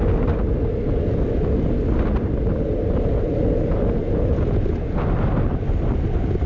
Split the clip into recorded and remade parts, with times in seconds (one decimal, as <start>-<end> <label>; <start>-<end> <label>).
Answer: 0.0-6.5 recorded